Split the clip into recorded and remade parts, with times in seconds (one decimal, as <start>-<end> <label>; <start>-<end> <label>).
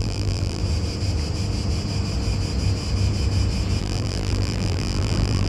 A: 0.0-0.6 remade; 0.6-3.8 recorded; 3.8-5.5 remade